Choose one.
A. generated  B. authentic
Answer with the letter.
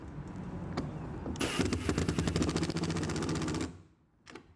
B